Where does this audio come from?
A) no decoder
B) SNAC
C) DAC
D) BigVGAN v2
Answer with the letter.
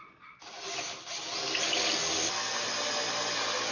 A